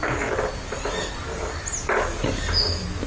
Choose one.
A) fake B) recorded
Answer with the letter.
B